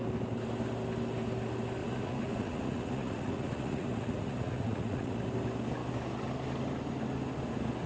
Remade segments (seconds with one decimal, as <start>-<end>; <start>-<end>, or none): 1.8-5.2